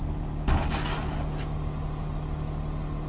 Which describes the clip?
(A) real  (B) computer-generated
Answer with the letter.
A